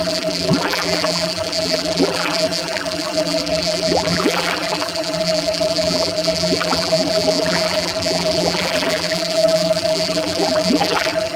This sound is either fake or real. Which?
fake